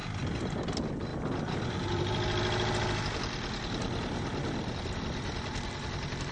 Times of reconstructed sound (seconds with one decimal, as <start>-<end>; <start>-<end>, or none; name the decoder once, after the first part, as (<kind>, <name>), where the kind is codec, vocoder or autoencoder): none